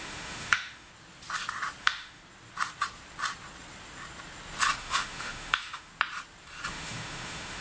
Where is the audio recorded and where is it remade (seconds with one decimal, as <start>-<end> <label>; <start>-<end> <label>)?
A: 0.0-0.9 remade; 0.9-1.8 recorded; 1.8-2.2 remade; 2.2-4.8 recorded; 4.8-5.9 remade; 5.9-6.7 recorded; 6.7-7.6 remade